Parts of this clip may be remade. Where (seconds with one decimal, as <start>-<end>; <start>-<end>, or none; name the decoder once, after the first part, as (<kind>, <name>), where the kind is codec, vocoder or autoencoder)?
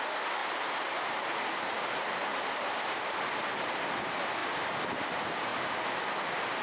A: 0.4-3.0 (vocoder, BigVGAN v2); 4.4-4.9